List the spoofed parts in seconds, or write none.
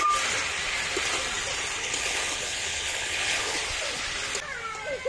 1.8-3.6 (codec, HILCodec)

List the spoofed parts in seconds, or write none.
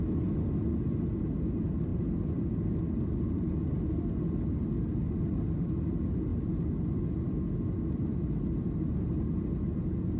none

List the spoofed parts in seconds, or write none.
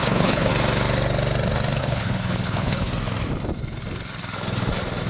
0.0-0.5 (codec, HILCodec); 1.8-2.9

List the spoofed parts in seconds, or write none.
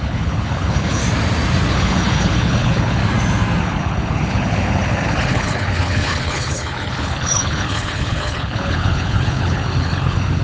0.0-1.0 (codec, HILCodec); 1.7-3.0; 3.6-10.4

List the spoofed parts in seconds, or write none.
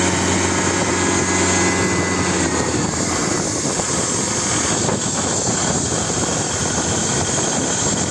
none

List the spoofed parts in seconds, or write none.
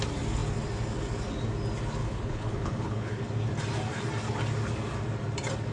2.0-3.3 (codec, HILCodec)